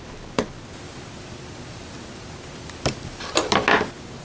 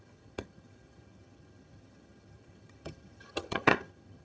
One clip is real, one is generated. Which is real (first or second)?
first